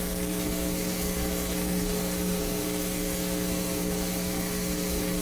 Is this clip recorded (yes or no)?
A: no